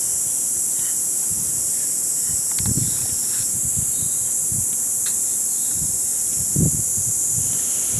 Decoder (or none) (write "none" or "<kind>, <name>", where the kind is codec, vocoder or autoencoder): none